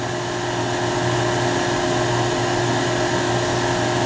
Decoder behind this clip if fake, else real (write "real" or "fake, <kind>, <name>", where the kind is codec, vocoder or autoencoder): real